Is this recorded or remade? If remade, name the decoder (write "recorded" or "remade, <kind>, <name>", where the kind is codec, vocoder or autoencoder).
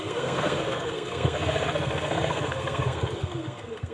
remade, codec, SNAC